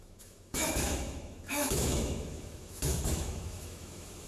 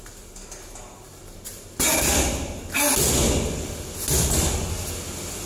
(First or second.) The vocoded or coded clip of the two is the first